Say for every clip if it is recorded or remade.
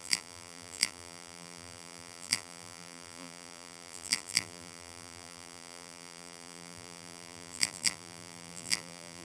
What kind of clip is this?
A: remade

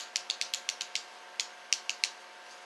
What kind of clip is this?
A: recorded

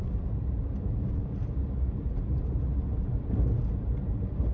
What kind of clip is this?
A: remade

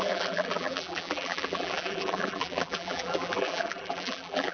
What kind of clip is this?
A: remade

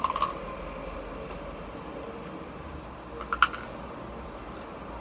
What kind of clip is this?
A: recorded